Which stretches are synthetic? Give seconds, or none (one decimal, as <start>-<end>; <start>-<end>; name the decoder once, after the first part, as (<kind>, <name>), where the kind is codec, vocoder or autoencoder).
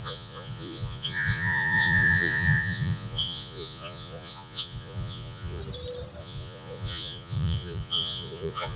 0.0-5.6 (vocoder, Vocos); 6.2-8.8